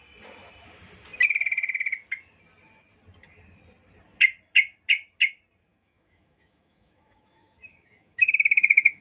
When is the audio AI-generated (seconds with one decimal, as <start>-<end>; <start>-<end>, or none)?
5.7-9.0